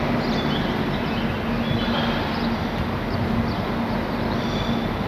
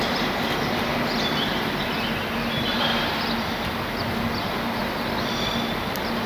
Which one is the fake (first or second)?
second